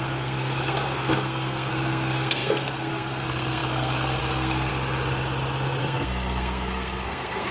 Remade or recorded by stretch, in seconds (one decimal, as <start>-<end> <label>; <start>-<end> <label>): 0.0-4.7 remade; 4.7-5.8 recorded; 5.8-7.5 remade